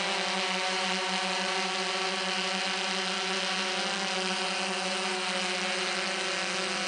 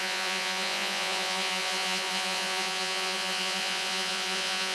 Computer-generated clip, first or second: second